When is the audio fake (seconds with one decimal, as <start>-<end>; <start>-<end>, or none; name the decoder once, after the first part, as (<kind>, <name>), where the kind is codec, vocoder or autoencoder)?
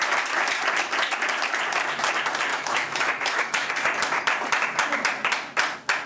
2.5-3.7 (autoencoder, DAC-VAE)